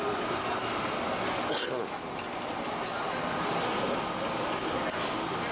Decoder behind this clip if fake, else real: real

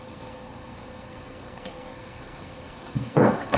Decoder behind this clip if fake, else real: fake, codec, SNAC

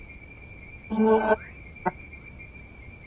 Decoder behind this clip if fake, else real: real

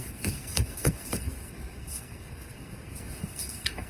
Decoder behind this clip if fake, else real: fake, codec, SNAC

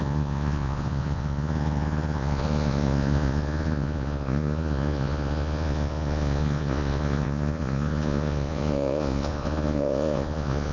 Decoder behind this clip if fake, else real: fake, vocoder, Vocos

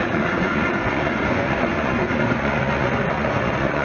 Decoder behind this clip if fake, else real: fake, vocoder, Vocos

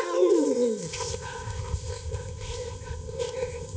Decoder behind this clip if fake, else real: fake, codec, ZipCodec